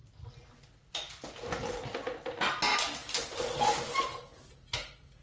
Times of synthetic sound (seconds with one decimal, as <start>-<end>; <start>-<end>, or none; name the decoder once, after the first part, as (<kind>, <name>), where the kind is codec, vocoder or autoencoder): none